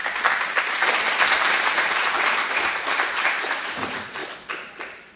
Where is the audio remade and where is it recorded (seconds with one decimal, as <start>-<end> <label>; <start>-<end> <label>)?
0.0-1.4 recorded; 1.4-4.2 remade; 4.2-4.8 recorded; 4.8-5.2 remade